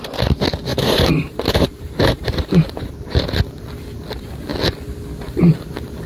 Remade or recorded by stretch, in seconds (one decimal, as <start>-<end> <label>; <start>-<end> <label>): 0.0-0.7 recorded; 0.7-3.4 remade; 3.4-6.1 recorded